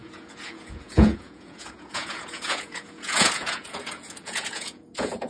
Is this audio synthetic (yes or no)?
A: yes